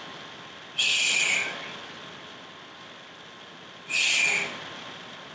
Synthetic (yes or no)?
no